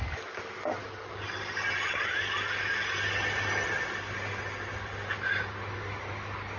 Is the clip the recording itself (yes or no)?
yes